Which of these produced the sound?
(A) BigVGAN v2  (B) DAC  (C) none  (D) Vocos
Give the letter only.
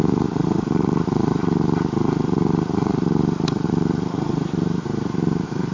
A